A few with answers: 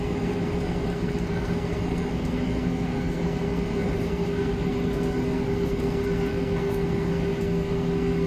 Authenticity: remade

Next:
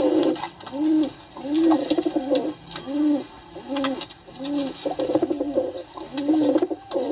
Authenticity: recorded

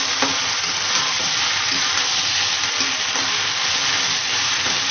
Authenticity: recorded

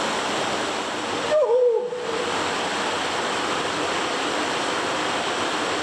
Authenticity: recorded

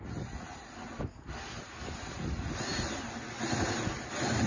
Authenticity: recorded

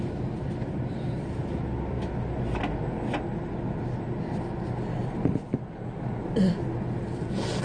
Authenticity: recorded